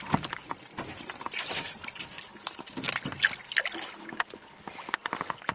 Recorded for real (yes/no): yes